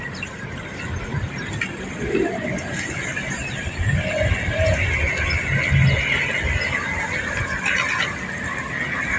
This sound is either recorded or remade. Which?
recorded